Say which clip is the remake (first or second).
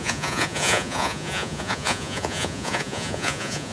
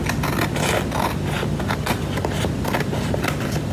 first